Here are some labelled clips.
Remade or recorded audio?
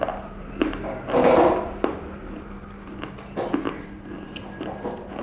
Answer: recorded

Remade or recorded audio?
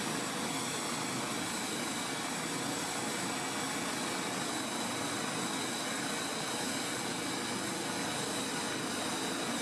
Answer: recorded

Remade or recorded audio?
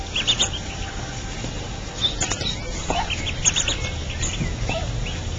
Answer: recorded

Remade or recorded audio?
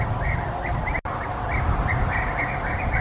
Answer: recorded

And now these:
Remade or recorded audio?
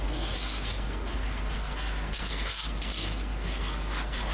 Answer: remade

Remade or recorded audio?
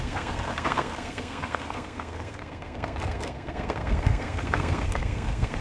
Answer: remade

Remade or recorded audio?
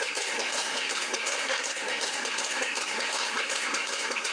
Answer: remade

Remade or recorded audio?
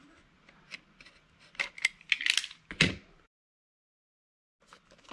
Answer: recorded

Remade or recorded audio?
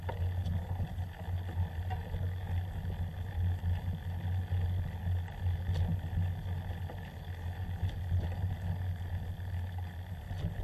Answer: recorded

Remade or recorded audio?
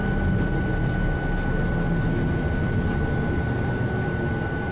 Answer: recorded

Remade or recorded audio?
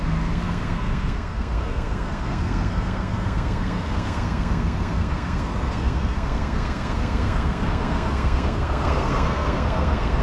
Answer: remade